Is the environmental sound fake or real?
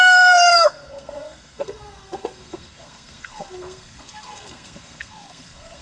fake